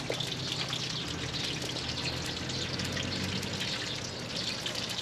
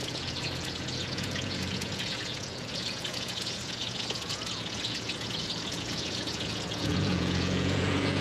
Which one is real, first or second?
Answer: first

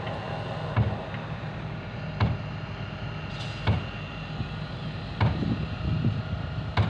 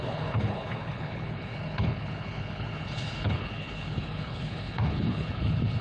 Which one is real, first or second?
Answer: first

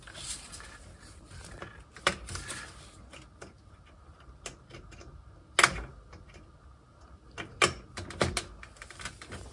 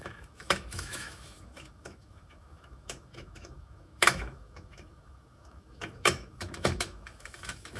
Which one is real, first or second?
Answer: first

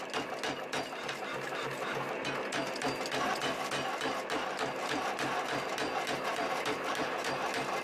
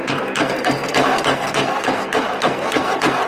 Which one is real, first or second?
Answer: first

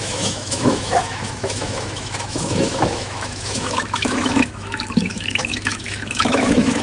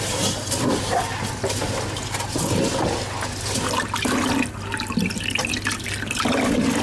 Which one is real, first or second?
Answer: second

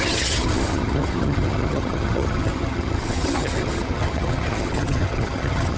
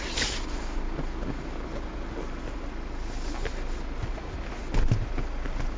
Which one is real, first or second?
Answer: second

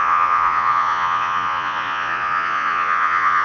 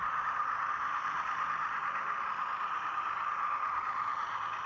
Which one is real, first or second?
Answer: second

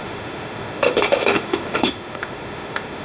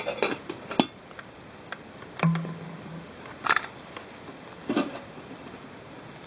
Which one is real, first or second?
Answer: second